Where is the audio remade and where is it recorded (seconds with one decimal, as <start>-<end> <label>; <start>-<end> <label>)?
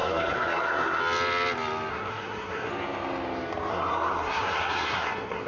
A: 0.0-1.0 remade; 1.0-1.9 recorded; 1.9-2.7 remade; 2.7-3.7 recorded; 3.7-5.5 remade